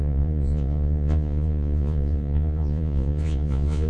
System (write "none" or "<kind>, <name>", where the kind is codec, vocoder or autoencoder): vocoder, Vocos